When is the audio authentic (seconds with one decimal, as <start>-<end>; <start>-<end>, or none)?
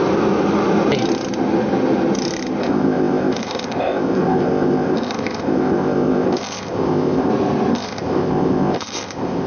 0.0-2.6; 7.3-7.7